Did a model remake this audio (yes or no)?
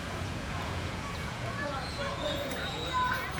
yes